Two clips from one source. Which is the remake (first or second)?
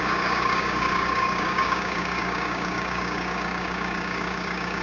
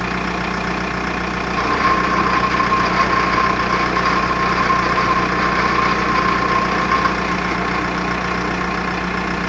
first